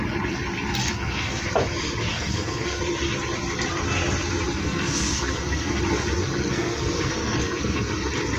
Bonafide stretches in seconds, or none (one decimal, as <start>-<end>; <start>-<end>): 0.0-0.8; 1.4-2.1; 2.8-4.6; 5.8-6.2; 7.9-8.4